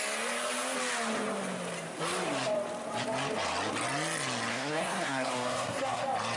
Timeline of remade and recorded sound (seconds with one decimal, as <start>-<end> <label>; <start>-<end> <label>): 0.0-4.5 recorded; 4.5-6.0 remade; 6.0-6.4 recorded